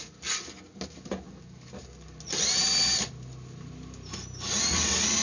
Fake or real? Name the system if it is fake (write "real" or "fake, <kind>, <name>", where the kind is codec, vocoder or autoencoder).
real